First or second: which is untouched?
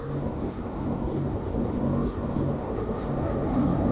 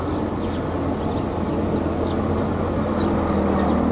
second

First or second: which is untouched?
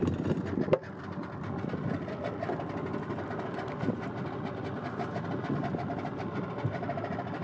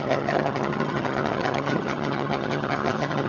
first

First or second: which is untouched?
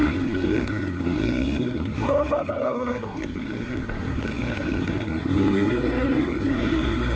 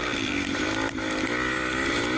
second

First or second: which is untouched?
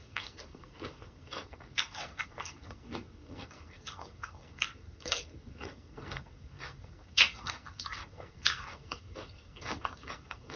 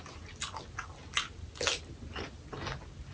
second